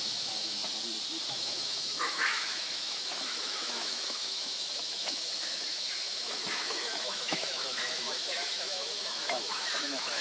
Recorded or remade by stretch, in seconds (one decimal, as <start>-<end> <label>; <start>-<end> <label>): 0.0-0.6 remade; 0.6-1.3 recorded; 1.3-10.2 remade